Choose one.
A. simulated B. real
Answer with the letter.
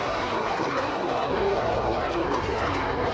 A